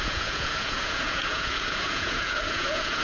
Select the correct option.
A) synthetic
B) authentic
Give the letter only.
A